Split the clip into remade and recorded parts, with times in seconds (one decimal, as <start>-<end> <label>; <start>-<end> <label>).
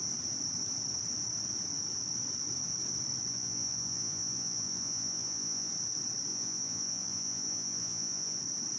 0.0-3.3 recorded; 3.3-5.7 remade; 5.7-6.3 recorded; 6.3-8.4 remade; 8.4-8.8 recorded